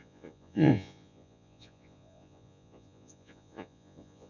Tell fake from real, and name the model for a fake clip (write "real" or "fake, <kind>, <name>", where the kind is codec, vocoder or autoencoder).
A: fake, vocoder, Vocos